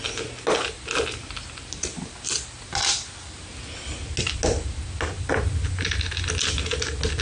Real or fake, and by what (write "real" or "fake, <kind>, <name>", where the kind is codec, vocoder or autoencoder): real